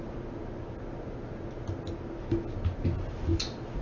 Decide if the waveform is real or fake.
real